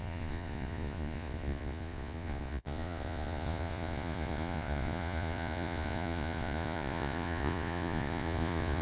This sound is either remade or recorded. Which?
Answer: remade